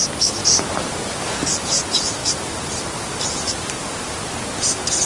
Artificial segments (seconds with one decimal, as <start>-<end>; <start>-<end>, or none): 2.2-4.2